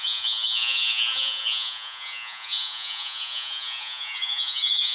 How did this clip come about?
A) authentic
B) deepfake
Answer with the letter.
B